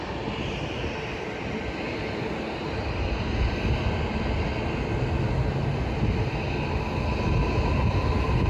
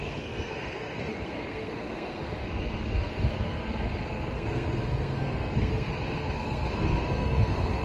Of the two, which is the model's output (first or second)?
second